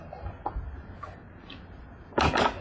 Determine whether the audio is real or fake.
real